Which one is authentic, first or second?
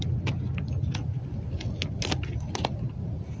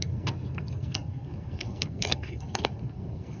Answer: first